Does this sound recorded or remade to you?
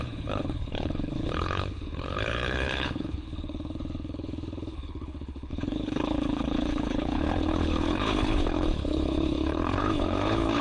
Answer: remade